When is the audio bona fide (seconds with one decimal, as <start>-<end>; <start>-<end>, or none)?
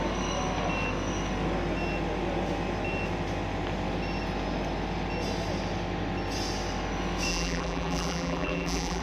0.0-7.3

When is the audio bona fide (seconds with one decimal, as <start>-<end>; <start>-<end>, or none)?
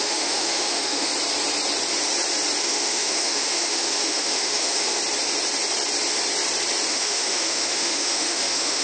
1.1-2.6; 5.0-6.9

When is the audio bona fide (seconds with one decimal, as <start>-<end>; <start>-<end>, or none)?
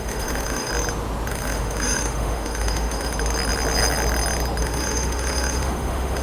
0.7-1.3; 3.1-4.6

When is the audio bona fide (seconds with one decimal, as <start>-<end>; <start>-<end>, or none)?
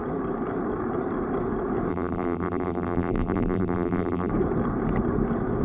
0.0-1.9; 4.3-5.6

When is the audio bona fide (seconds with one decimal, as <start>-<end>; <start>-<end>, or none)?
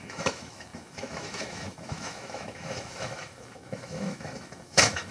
none